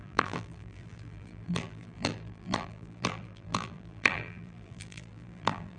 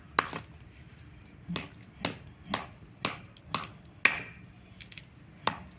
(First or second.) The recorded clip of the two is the second